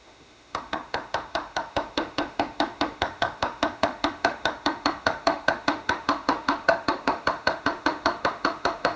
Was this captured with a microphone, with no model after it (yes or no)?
no